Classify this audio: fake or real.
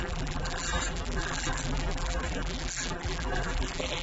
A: fake